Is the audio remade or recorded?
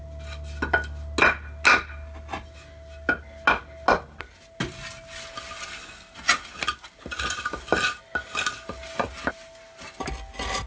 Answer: recorded